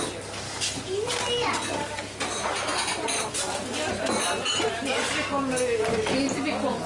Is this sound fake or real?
real